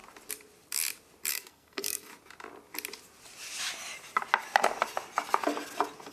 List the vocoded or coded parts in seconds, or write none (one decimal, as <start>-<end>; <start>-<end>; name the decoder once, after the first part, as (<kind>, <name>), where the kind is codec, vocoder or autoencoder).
1.3-2.1 (codec, SNAC)